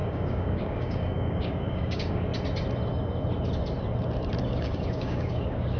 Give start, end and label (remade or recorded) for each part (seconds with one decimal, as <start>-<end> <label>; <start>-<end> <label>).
0.0-2.3 remade; 2.3-4.4 recorded; 4.4-5.8 remade